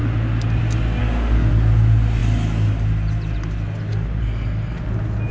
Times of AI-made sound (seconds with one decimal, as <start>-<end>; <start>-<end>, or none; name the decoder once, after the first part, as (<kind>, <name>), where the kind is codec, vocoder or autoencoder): 1.0-1.5 (codec, SNAC)